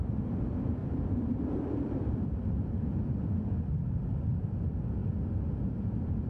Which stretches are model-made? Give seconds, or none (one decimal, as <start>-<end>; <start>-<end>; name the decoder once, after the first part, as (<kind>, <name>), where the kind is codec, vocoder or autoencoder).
0.8-4.6 (vocoder, BigVGAN v2)